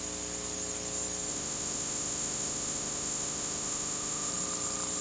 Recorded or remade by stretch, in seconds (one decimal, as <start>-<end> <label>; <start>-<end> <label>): 0.0-1.3 recorded; 1.3-4.3 remade; 4.3-5.0 recorded